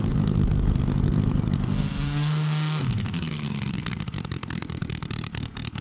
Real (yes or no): no